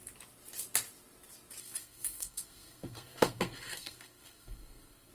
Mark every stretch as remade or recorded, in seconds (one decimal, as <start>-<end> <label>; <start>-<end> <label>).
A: 0.0-1.6 recorded; 1.6-5.1 remade